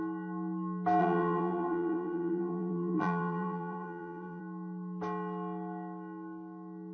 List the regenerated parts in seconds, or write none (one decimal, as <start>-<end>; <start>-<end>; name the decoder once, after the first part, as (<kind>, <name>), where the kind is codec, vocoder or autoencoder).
1.0-4.4 (vocoder, BigVGAN v2)